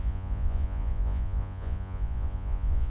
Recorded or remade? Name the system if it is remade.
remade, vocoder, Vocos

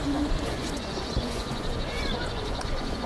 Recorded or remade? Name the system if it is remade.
remade, vocoder, Vocos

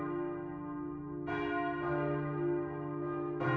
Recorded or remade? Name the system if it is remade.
recorded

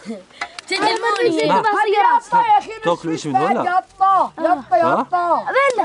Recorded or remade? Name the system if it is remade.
recorded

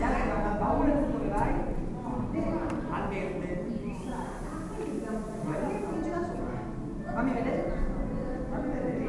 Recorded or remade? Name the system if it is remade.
recorded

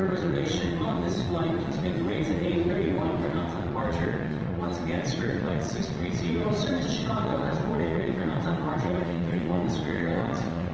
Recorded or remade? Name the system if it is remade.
remade, vocoder, Vocos